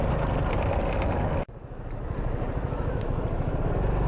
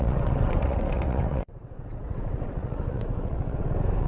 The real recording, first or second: first